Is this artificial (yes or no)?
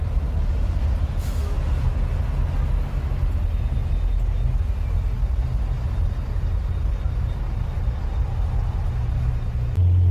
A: no